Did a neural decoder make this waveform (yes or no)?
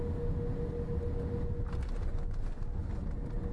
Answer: no